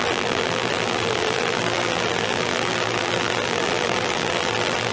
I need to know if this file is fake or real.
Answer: fake